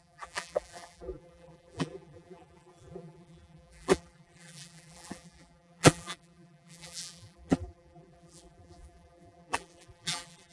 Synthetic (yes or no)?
yes